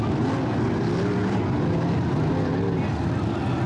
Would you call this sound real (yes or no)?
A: yes